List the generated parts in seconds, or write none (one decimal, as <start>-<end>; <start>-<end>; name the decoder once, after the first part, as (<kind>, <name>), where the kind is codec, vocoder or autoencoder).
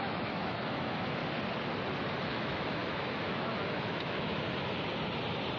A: 0.0-1.2 (autoencoder, DAC-VAE); 2.3-4.3